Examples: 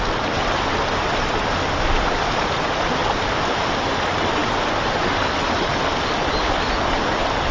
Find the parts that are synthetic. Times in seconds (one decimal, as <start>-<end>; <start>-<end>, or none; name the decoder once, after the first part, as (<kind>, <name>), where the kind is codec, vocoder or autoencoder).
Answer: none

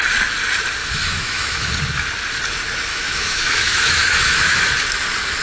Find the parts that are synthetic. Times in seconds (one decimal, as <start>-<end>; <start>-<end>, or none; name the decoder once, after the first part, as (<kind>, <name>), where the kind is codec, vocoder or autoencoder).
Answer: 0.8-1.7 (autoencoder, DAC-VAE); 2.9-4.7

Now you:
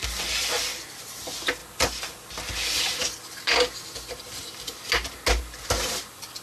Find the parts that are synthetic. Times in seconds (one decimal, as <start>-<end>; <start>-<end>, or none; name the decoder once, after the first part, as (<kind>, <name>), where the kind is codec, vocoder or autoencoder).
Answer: none

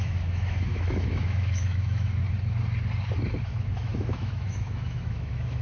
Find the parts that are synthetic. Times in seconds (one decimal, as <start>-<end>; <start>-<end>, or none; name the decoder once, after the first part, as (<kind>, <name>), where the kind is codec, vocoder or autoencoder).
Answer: 0.0-2.2 (autoencoder, DAC-VAE); 3.4-5.6